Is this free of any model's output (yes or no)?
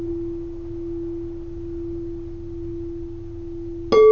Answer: yes